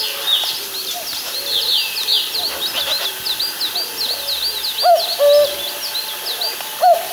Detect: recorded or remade recorded